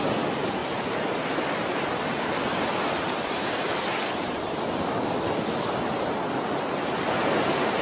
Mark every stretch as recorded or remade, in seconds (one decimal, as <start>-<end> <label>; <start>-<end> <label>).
0.0-0.6 recorded; 0.6-5.3 remade; 5.3-7.8 recorded